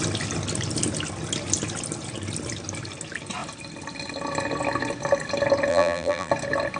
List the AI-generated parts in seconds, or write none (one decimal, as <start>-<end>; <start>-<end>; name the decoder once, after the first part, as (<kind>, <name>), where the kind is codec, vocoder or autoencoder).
5.7-6.3 (vocoder, BigVGAN v2)